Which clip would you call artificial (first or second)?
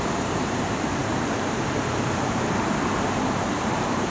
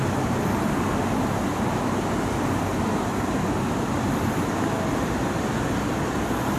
first